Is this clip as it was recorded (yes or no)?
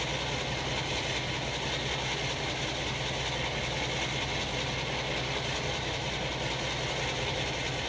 yes